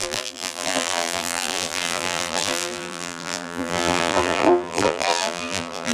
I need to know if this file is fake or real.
fake